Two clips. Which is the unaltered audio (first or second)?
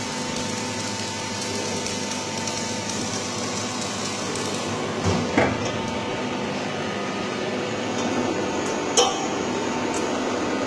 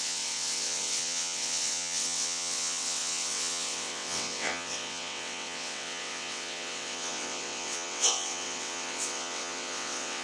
first